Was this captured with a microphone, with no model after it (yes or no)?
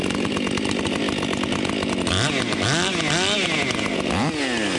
yes